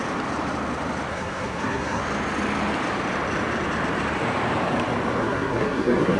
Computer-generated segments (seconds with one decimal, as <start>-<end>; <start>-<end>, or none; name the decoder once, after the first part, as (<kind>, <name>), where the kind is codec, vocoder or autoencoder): 1.1-2.0 (codec, SNAC); 5.2-6.2